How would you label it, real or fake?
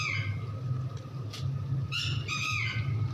real